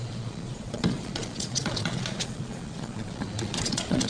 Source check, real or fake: fake